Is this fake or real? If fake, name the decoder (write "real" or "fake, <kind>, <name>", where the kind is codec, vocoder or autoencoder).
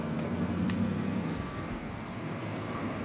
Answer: fake, codec, SNAC